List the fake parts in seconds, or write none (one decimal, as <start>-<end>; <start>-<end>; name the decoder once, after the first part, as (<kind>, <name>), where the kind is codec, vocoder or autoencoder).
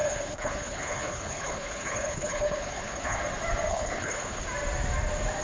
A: 0.0-3.2 (codec, HILCodec); 3.7-4.4